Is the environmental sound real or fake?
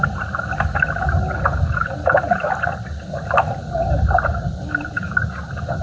real